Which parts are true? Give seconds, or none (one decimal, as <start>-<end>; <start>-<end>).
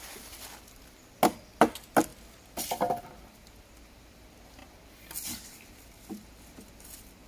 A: 0.0-2.1; 3.0-4.6; 5.8-7.3